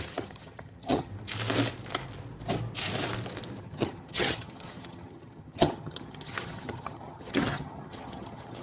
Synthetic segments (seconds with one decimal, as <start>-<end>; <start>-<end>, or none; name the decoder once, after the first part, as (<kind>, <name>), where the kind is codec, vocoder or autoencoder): 0.0-1.1 (vocoder, HiFi-GAN); 3.6-8.6